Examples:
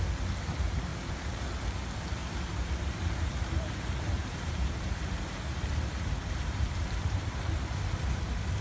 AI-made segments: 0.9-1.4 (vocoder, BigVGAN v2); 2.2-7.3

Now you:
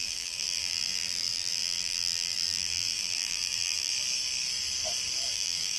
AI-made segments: 0.0-3.9 (vocoder, BigVGAN v2); 5.3-5.8

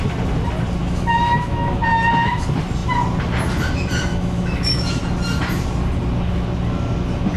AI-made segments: 0.8-1.8 (autoencoder, DAC-VAE); 4.1-5.0

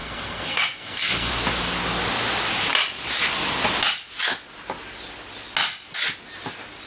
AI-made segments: 0.0-1.3 (codec, SNAC)

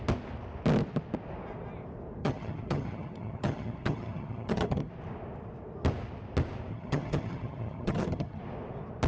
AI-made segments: 2.2-4.9 (vocoder, HiFi-GAN); 6.7-8.4